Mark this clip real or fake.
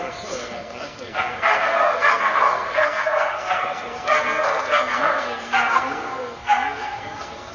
fake